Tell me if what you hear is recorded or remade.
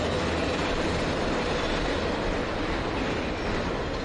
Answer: recorded